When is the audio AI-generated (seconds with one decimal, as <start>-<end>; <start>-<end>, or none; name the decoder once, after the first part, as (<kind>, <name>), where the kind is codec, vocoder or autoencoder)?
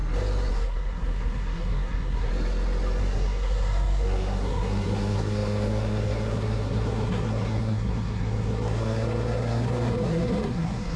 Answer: 0.5-2.3 (codec, SNAC); 3.0-11.0